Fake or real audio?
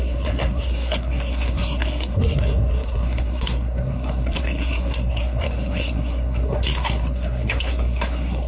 fake